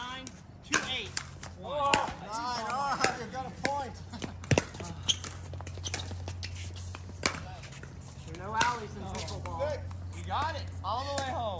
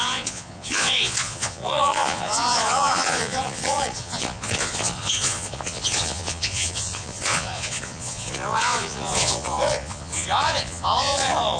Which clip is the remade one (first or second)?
second